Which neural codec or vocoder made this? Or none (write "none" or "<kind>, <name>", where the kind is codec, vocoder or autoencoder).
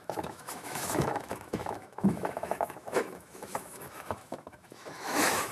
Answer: autoencoder, DAC-VAE